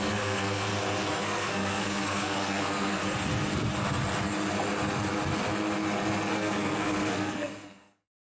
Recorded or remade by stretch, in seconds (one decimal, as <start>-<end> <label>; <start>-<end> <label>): 0.0-0.7 remade; 0.7-1.2 recorded; 1.2-3.0 remade; 3.0-6.3 recorded; 6.3-8.2 remade